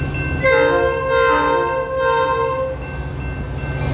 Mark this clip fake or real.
real